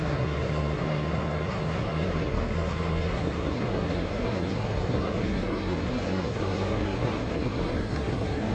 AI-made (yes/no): yes